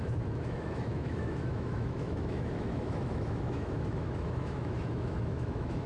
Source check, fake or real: fake